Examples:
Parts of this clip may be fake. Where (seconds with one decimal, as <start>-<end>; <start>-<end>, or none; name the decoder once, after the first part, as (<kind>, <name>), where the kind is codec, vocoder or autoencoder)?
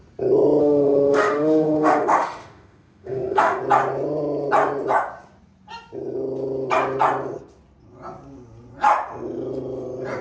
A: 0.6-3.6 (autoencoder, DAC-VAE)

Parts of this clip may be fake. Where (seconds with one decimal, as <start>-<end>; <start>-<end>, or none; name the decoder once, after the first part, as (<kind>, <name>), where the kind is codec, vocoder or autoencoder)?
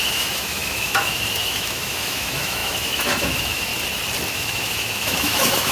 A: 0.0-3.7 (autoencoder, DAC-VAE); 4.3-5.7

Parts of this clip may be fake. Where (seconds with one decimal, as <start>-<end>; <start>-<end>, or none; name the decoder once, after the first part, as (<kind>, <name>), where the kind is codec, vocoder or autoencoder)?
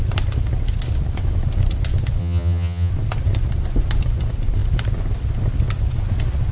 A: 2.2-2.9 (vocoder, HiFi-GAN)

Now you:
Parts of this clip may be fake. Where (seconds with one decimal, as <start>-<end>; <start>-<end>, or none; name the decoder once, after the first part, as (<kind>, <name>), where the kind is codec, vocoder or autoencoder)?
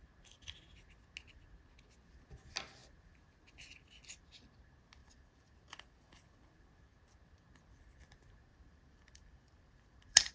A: 5.0-6.3 (vocoder, BigVGAN v2); 8.5-10.3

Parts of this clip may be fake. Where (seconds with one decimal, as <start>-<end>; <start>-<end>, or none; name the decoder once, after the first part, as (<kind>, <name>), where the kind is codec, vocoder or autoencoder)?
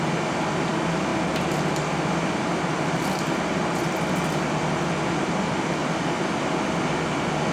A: 1.1-3.8 (vocoder, BigVGAN v2)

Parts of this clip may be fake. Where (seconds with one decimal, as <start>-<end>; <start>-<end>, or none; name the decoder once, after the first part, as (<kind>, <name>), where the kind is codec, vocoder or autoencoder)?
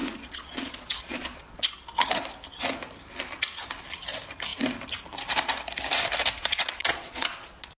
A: 0.0-1.7 (vocoder, Vocos); 6.4-7.8